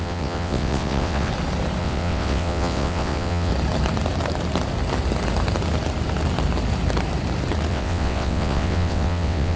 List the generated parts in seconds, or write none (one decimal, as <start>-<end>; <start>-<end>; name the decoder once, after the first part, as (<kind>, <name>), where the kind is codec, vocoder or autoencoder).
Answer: 0.0-1.3 (vocoder, WaveNeXt); 1.8-3.5; 7.7-9.6